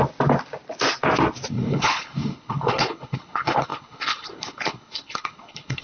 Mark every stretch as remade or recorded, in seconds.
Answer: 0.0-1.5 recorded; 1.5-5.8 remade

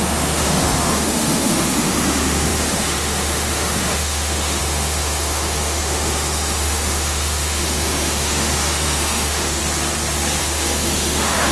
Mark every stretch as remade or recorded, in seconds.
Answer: 0.0-9.6 remade; 9.6-10.4 recorded; 10.4-11.5 remade

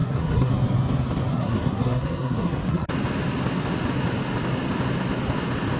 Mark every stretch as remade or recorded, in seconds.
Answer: 0.0-0.5 remade; 0.5-1.3 recorded; 1.3-2.9 remade; 2.9-5.8 recorded